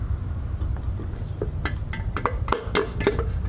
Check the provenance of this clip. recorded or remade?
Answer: recorded